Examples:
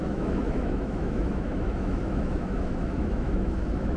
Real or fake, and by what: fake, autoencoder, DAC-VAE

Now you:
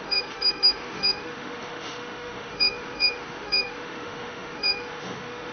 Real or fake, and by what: fake, autoencoder, DAC-VAE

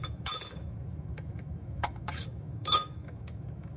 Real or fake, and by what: fake, autoencoder, DAC-VAE